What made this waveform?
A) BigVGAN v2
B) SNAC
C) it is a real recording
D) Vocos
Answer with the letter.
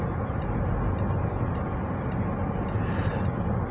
C